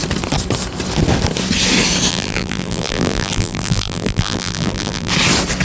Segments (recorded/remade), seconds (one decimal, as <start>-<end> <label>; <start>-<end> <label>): 0.0-2.1 recorded; 2.1-5.1 remade; 5.1-5.6 recorded